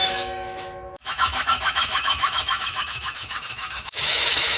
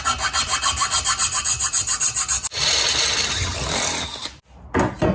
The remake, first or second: first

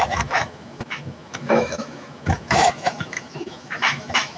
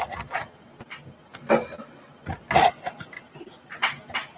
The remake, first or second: first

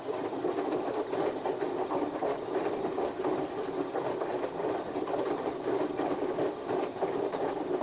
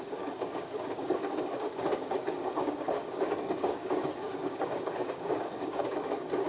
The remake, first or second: second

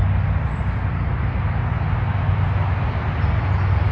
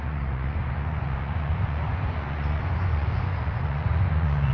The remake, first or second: second